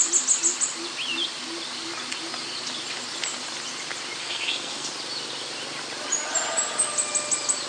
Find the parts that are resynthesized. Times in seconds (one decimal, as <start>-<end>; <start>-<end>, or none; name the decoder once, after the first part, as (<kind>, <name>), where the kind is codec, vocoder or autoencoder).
4.2-4.9 (codec, SNAC)